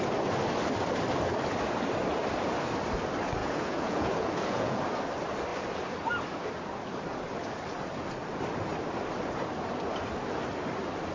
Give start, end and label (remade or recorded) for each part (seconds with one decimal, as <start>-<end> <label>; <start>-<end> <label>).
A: 0.0-3.4 recorded; 3.4-4.8 remade; 4.8-11.1 recorded

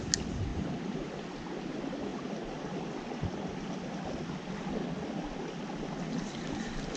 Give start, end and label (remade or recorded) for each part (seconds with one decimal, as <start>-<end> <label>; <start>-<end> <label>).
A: 0.0-0.5 recorded; 0.5-1.1 remade; 1.1-7.0 recorded

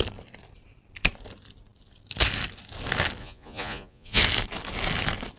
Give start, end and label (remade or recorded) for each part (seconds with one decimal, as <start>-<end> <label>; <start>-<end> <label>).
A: 0.0-3.2 recorded; 3.2-4.2 remade; 4.2-5.4 recorded

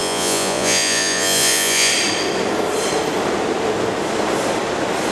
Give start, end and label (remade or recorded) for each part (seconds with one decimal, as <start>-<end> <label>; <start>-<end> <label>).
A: 0.0-1.9 remade; 1.9-5.1 recorded